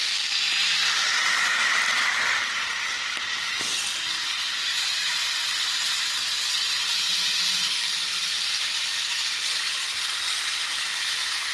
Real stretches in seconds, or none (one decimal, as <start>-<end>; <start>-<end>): 2.5-4.6; 5.5-8.2; 9.9-11.5